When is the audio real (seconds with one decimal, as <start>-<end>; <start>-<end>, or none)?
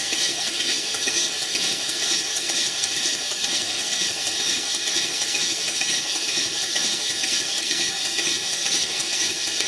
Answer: none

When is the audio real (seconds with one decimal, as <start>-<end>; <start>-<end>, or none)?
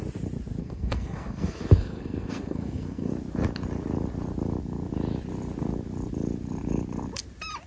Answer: 0.0-0.6; 3.1-7.7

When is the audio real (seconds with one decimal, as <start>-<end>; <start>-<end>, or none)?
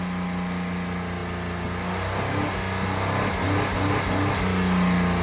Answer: 0.0-5.2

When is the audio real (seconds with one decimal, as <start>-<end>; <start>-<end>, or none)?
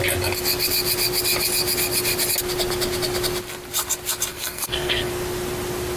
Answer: 0.0-4.3; 5.1-6.0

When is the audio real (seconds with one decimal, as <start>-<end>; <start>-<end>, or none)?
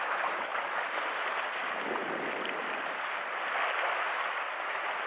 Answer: 0.0-0.5; 1.2-2.0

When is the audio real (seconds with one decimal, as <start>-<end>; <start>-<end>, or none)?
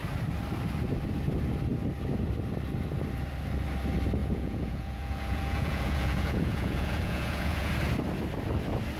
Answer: 0.0-4.2; 7.7-9.0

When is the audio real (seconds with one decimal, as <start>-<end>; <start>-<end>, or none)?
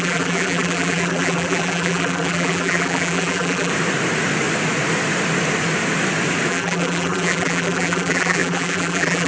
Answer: 3.7-6.5